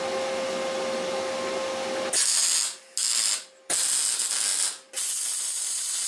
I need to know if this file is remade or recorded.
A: recorded